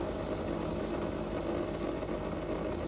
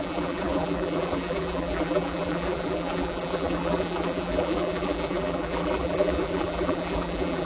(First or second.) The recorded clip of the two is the first